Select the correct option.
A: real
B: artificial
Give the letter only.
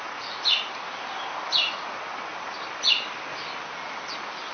A